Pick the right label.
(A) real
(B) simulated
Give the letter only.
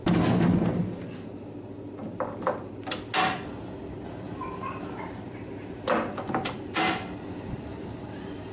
A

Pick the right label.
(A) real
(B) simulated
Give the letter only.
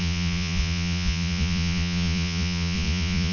B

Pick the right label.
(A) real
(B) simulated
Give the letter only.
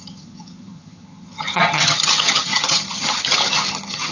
B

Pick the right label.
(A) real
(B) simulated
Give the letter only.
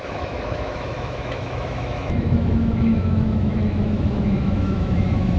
B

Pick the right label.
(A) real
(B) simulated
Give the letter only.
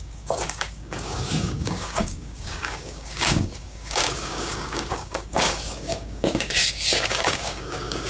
B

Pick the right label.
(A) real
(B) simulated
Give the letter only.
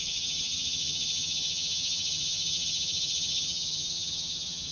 B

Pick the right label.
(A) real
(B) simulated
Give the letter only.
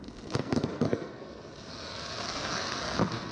B